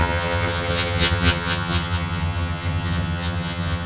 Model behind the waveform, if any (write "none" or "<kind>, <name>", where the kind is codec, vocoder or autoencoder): vocoder, HiFi-GAN